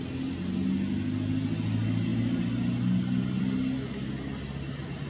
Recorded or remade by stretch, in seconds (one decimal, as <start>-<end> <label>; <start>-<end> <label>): 0.0-5.1 recorded